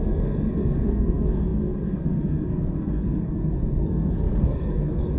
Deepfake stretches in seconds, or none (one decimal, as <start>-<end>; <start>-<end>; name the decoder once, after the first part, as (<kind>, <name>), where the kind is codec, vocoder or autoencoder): 0.0-5.2 (codec, SNAC)